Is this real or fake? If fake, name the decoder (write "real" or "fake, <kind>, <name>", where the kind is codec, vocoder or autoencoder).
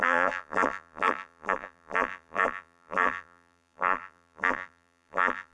fake, vocoder, BigVGAN v2